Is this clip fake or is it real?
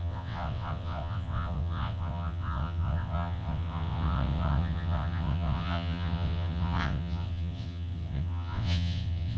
fake